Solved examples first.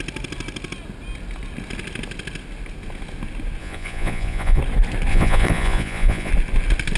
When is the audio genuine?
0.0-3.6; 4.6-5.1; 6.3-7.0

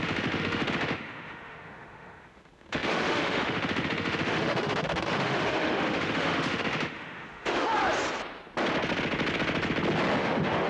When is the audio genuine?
7.7-10.2

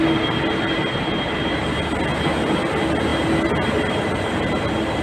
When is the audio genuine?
0.0-5.0